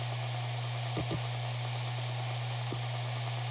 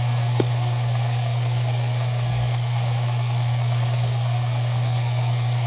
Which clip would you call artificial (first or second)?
second